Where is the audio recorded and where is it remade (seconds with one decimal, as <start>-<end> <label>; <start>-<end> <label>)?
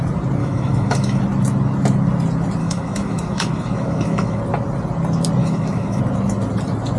0.0-0.4 recorded; 0.4-1.2 remade; 1.2-2.6 recorded; 2.6-4.4 remade; 4.4-5.4 recorded; 5.4-6.0 remade; 6.0-7.0 recorded